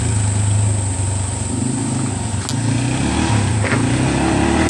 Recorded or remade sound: recorded